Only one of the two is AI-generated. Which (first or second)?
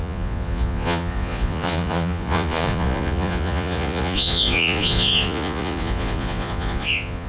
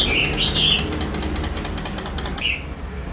first